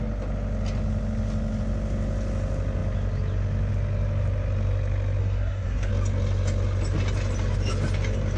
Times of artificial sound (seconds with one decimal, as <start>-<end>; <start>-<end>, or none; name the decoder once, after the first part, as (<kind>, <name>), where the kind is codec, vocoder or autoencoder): 5.2-5.9 (codec, SNAC)